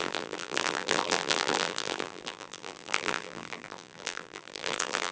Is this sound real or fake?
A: fake